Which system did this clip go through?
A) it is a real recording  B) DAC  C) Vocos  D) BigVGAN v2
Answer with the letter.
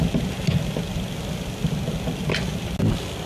A